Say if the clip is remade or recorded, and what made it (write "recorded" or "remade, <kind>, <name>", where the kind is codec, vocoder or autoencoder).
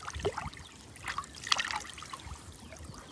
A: recorded